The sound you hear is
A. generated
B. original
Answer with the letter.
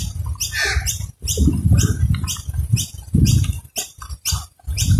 B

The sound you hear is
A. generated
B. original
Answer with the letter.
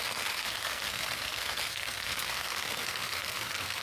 A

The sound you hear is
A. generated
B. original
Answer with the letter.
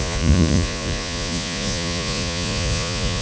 A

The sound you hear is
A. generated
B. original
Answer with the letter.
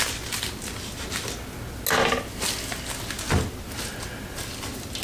B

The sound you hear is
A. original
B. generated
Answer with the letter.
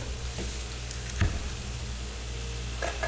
A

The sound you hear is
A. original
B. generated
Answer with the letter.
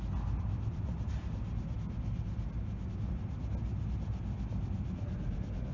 A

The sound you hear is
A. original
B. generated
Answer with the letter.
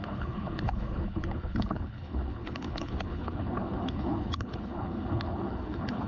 B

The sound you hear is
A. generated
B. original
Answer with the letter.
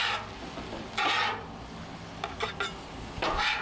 B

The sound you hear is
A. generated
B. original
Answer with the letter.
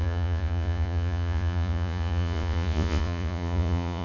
A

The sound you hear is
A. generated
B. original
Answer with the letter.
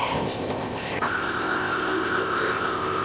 A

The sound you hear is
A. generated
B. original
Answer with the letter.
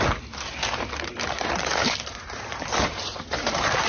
A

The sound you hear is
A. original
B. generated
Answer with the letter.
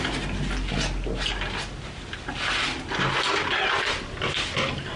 A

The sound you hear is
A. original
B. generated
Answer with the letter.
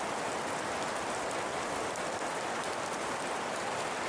A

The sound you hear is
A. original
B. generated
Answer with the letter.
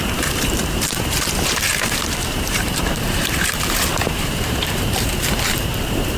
B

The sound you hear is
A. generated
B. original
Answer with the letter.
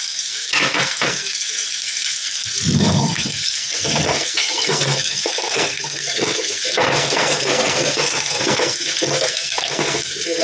A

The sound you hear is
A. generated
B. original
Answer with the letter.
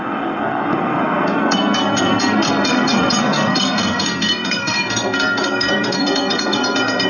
A